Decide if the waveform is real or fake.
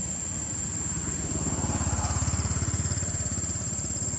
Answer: fake